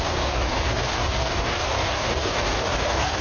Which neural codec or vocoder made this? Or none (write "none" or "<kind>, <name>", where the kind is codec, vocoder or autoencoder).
codec, DAC